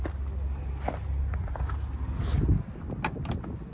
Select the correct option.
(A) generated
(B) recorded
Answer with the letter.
B